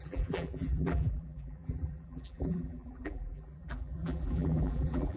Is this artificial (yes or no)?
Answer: yes